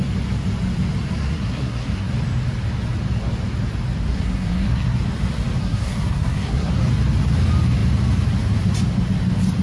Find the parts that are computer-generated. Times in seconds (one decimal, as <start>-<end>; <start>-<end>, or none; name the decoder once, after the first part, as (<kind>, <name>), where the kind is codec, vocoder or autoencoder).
1.2-2.1 (codec, SNAC); 4.1-5.0; 5.6-6.7